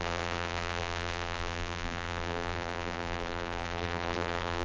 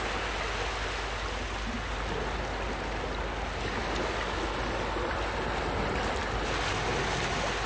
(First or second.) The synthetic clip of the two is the first